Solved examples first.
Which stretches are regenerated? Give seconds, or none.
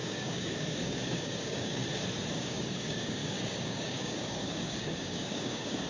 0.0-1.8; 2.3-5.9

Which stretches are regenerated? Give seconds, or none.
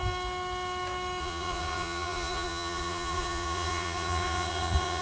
1.2-5.0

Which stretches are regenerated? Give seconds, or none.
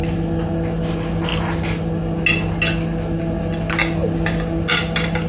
none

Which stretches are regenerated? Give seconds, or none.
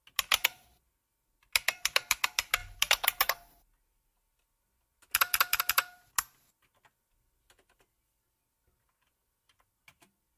none